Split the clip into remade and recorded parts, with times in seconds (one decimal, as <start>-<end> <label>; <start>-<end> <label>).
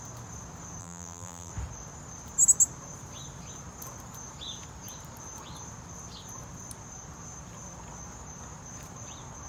0.0-0.8 recorded; 0.8-1.5 remade; 1.5-9.5 recorded